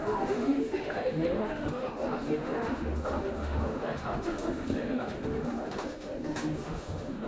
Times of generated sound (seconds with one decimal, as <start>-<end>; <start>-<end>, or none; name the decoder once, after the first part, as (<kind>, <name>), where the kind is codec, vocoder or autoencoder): 0.0-7.3 (autoencoder, DAC-VAE)